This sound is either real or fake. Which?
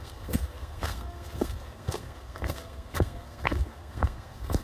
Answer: fake